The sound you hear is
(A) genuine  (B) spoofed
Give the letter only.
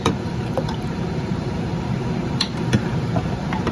B